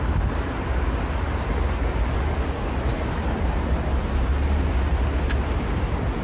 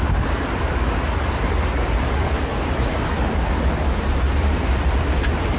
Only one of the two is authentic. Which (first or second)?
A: first